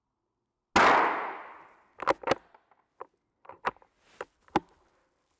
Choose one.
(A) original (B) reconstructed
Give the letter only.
A